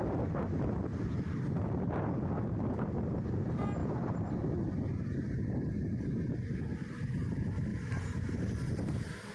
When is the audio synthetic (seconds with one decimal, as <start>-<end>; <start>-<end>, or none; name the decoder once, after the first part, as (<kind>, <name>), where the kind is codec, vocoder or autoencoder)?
none